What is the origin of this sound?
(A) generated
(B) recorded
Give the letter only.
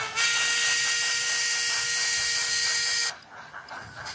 B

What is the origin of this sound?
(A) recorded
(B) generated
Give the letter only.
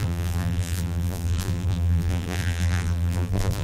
B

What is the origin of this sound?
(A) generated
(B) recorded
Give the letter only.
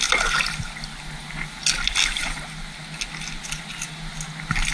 B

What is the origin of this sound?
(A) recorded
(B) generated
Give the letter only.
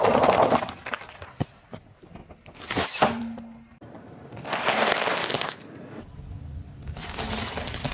A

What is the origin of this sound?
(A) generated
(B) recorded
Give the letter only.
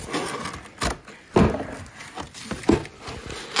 B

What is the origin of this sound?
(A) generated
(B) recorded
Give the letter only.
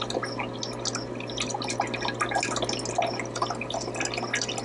B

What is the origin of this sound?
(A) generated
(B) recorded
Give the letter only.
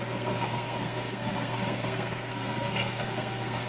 A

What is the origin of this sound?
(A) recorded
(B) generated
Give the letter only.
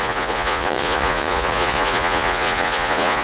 B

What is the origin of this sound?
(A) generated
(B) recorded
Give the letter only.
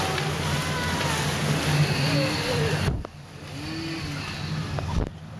B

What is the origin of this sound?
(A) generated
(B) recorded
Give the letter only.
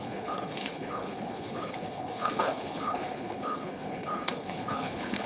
A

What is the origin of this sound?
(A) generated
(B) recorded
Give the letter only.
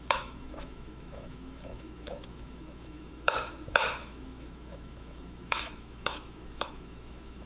A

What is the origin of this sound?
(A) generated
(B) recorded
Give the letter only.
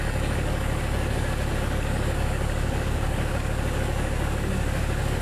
A